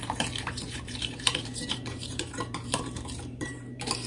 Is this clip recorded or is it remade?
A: remade